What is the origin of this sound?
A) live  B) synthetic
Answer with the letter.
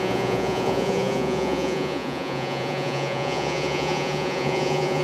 B